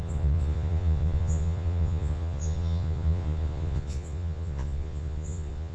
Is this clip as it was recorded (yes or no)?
no